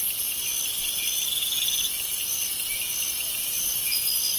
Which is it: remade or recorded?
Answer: recorded